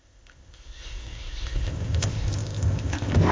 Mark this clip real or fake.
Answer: fake